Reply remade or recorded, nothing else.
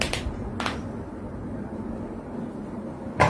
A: recorded